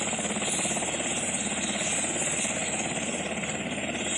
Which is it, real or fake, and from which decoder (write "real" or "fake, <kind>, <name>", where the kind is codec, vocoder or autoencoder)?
real